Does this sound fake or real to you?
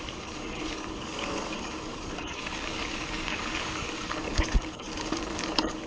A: fake